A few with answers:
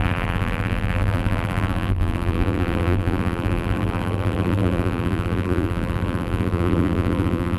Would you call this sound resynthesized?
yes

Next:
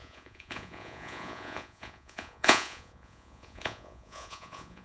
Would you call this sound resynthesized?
yes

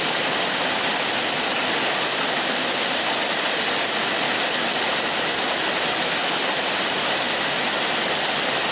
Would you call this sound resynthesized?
no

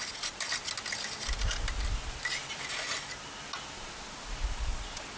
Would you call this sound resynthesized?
no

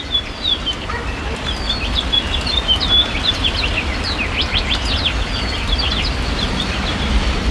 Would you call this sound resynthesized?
yes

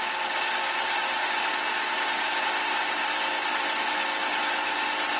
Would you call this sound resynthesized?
no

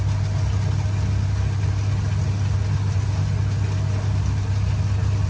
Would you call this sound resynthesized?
no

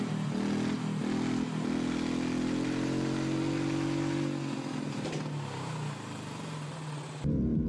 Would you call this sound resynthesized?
no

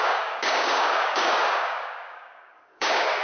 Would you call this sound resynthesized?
yes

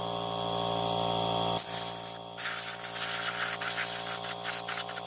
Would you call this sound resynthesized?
no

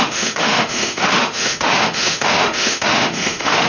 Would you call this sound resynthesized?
yes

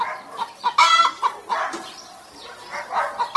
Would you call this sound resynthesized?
no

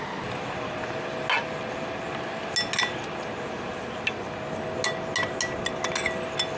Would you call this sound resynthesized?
no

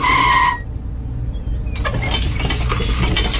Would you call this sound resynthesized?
no